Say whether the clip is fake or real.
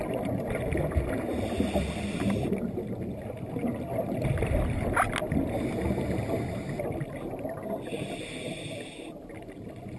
real